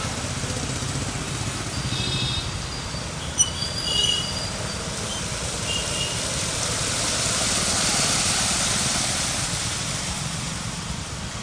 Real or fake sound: real